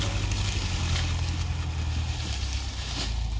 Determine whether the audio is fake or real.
real